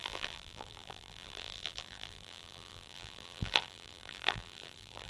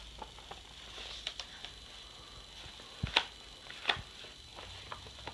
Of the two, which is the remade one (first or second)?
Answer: first